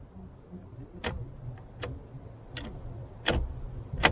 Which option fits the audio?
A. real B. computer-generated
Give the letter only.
A